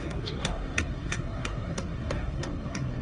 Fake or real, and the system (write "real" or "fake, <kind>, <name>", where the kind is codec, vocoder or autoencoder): fake, codec, SNAC